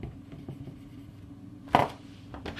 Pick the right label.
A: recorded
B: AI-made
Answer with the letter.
A